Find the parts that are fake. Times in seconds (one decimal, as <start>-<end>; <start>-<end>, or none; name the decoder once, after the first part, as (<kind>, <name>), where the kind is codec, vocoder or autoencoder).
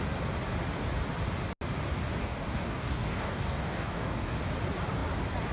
2.2-4.4 (codec, DAC)